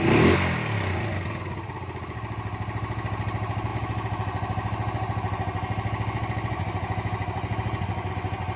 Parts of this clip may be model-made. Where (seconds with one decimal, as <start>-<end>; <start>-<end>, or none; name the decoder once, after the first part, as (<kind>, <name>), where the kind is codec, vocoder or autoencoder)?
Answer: none